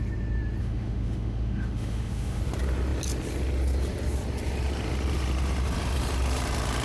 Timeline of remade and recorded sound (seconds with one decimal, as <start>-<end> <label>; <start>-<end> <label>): 0.0-0.6 recorded; 0.6-2.4 remade; 2.4-6.8 recorded